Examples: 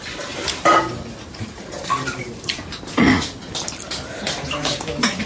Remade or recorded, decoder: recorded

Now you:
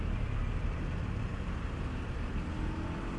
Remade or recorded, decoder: recorded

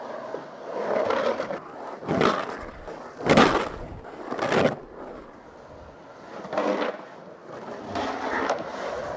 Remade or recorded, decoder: recorded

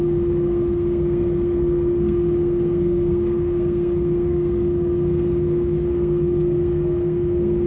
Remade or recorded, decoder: remade, codec, SNAC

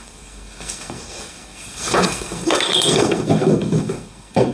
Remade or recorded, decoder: remade, codec, SNAC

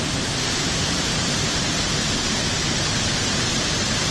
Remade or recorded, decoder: recorded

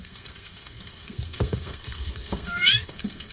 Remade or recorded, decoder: remade, codec, SNAC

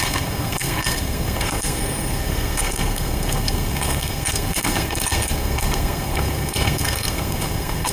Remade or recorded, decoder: remade, codec, SNAC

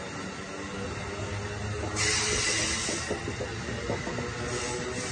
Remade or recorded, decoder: recorded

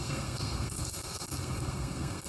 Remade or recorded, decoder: remade, codec, SNAC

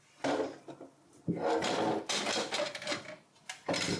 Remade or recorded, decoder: recorded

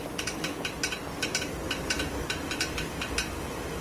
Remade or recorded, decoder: recorded